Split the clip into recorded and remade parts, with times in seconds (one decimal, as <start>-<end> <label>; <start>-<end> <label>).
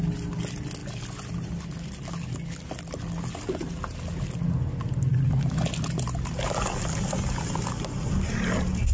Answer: 0.0-8.9 recorded